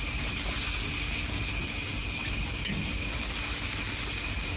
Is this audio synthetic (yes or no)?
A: no